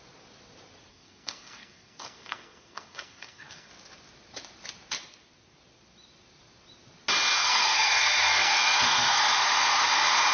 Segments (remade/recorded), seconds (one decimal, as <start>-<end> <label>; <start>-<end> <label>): 0.0-0.9 recorded; 0.9-3.7 remade; 3.7-7.4 recorded; 7.4-9.2 remade; 9.2-10.3 recorded